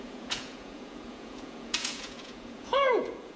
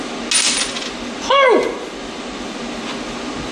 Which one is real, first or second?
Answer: second